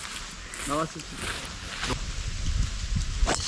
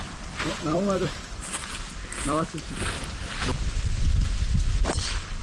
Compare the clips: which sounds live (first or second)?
first